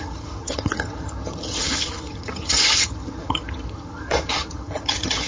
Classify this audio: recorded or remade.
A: remade